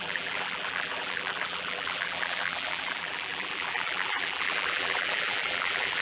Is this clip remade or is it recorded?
remade